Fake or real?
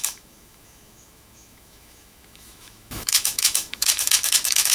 fake